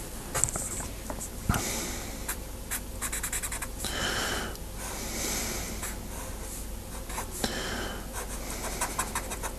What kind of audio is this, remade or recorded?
recorded